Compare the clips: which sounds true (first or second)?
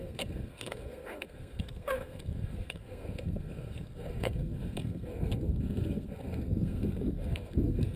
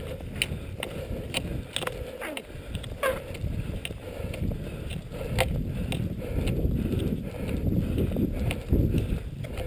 second